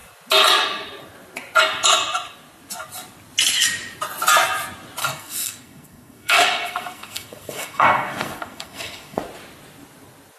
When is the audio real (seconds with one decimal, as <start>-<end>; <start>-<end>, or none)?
0.0-5.0; 9.2-10.4